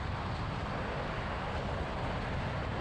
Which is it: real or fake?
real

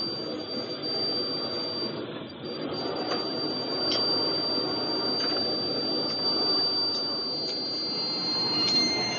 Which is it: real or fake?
real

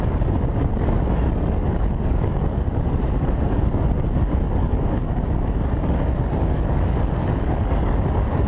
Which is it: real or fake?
fake